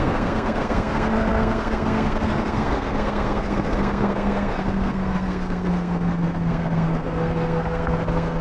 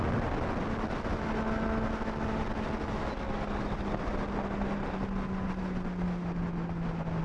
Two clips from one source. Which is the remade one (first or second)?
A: first